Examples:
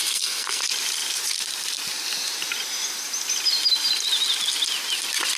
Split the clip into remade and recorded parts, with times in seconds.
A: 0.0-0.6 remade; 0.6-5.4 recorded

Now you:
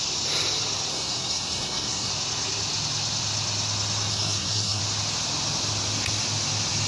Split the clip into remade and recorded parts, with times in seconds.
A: 0.0-0.9 recorded; 0.9-2.1 remade; 2.1-4.1 recorded; 4.1-4.8 remade; 4.8-6.9 recorded

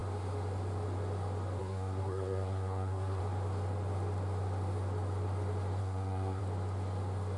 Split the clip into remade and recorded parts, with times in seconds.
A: 0.0-1.6 recorded; 1.6-3.2 remade; 3.2-5.8 recorded; 5.8-6.4 remade; 6.4-7.4 recorded

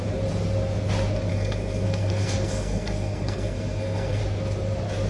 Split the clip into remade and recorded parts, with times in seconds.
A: 0.0-1.3 recorded; 1.3-4.2 remade; 4.2-5.1 recorded

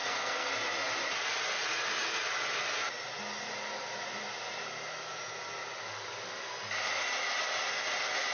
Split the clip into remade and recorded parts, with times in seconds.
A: 0.0-0.5 remade; 0.5-8.3 recorded

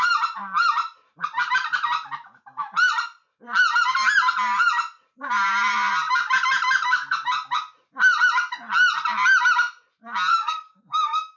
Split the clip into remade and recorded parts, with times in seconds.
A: 0.0-10.3 recorded; 10.3-11.4 remade